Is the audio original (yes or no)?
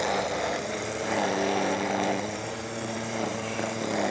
no